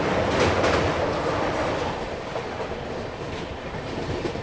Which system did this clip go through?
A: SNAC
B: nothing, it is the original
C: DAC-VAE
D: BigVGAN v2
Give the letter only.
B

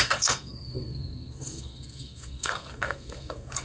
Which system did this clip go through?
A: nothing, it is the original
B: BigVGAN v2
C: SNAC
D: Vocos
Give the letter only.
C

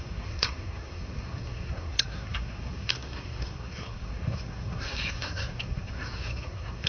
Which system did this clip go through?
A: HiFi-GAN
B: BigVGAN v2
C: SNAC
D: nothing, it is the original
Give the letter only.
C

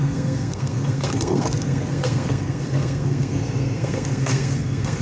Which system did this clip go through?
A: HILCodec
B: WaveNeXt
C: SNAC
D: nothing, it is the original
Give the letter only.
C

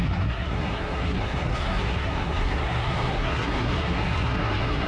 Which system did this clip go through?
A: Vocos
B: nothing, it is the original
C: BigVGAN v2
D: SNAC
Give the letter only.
D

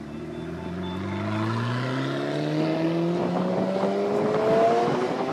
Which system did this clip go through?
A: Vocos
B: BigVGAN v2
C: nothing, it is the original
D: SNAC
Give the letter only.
C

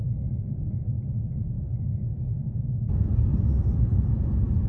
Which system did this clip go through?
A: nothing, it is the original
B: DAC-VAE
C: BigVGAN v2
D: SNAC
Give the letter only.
A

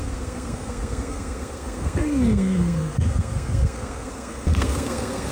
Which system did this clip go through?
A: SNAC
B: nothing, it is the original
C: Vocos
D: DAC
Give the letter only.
A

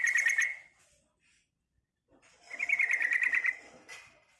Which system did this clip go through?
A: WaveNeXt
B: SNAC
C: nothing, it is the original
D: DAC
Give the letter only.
C